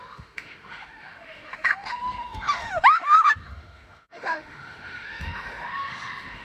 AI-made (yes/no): yes